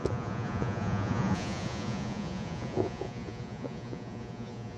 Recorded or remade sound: remade